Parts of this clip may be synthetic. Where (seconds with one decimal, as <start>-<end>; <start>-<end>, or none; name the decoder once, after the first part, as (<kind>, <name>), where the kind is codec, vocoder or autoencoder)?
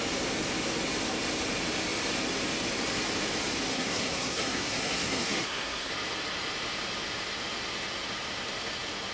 3.7-5.9 (codec, SNAC)